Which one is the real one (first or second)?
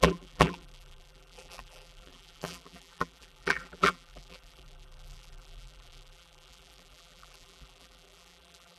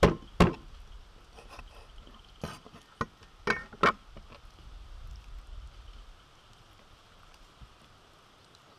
second